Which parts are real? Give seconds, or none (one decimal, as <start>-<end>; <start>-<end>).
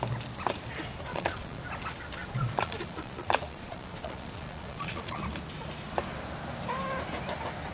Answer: 0.0-1.1; 1.6-2.2; 5.2-7.7